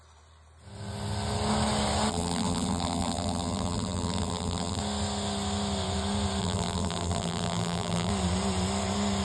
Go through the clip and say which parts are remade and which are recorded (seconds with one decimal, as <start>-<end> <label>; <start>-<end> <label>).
0.0-2.1 recorded; 2.1-4.8 remade; 4.8-6.4 recorded; 6.4-8.1 remade; 8.1-9.2 recorded